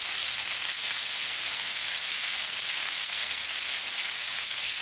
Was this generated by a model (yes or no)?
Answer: yes